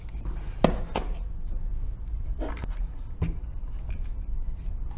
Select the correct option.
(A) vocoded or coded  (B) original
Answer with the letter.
B